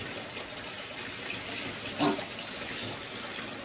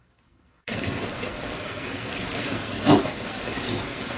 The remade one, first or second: second